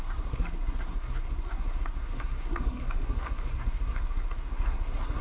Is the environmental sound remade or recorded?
remade